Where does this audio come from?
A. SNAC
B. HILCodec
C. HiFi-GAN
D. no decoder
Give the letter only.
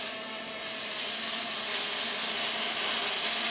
D